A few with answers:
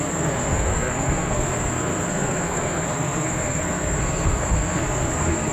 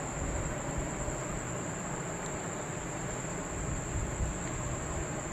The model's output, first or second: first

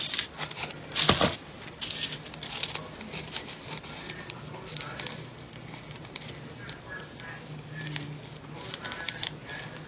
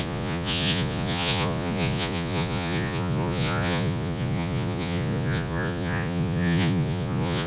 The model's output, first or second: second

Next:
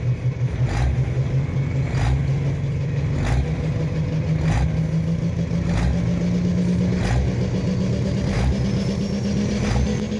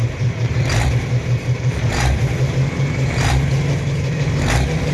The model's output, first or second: second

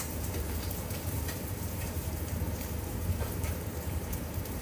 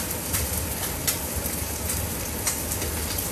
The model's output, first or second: first